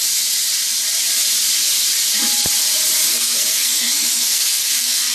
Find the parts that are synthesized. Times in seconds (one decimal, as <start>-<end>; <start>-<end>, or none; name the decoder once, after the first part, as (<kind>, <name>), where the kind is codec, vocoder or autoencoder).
3.1-5.1 (codec, SNAC)